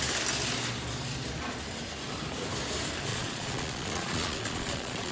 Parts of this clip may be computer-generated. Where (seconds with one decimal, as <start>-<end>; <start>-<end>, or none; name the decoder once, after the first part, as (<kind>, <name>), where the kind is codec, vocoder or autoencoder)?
3.1-5.1 (vocoder, Vocos)